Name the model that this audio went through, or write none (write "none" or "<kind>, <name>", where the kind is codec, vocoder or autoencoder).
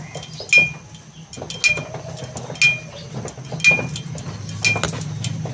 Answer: none